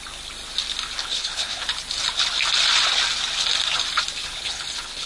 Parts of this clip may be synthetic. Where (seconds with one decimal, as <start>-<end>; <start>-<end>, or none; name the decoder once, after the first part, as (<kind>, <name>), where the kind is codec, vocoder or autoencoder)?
1.0-1.6 (codec, HILCodec); 4.2-5.1